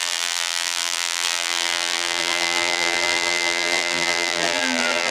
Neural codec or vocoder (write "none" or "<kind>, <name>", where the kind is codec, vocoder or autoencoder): vocoder, BigVGAN v2